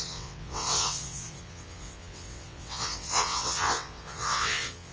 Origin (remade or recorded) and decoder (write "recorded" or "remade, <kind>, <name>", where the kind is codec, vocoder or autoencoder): remade, vocoder, WaveNeXt